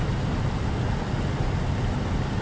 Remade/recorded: recorded